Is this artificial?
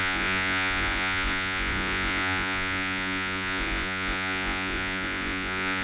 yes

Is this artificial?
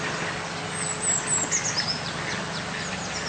no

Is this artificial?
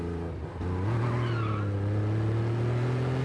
no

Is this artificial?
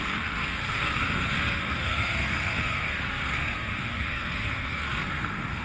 yes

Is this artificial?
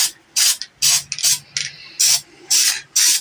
no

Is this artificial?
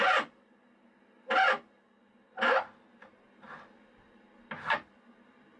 no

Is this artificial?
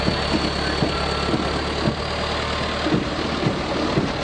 no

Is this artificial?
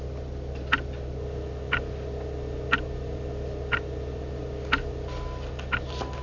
no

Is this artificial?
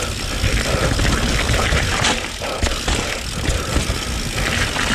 no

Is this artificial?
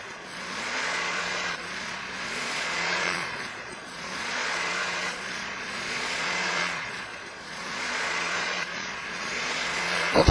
yes